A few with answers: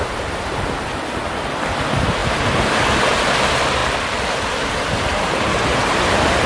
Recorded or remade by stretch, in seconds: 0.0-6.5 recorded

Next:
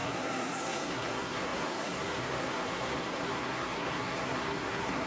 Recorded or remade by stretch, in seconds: 0.0-5.1 remade

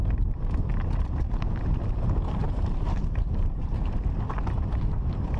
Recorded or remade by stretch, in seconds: 0.0-2.4 recorded; 2.4-3.7 remade; 3.7-5.4 recorded

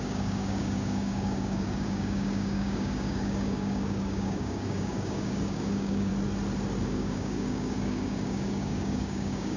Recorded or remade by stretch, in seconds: 0.0-6.1 remade; 6.1-6.8 recorded; 6.8-9.6 remade

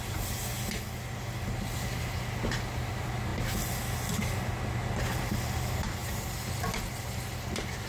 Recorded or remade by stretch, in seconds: 0.0-6.0 recorded; 6.0-6.8 remade; 6.8-7.9 recorded

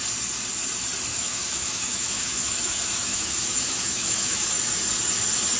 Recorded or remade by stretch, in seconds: 0.0-1.1 recorded; 1.1-4.5 remade; 4.5-5.6 recorded